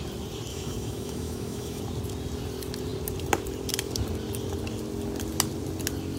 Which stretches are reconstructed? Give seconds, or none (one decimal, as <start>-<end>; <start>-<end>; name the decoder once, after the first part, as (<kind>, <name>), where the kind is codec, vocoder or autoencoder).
0.5-1.8 (autoencoder, DAC-VAE)